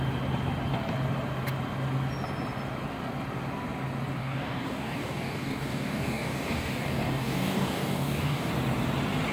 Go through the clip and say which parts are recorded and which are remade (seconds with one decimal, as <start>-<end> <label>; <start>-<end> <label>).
0.0-4.2 recorded; 4.2-8.5 remade; 8.5-9.3 recorded